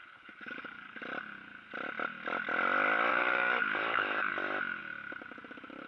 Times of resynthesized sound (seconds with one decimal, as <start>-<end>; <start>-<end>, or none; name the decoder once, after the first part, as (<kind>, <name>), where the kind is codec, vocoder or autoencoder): 0.0-1.0 (codec, DAC); 3.1-4.3